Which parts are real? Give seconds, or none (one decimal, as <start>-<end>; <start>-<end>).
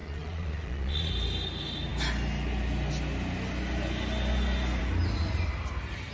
1.1-6.1